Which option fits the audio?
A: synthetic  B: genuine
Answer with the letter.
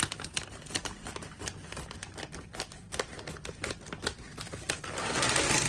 B